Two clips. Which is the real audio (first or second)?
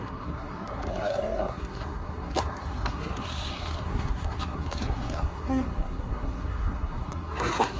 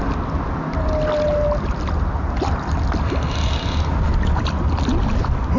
second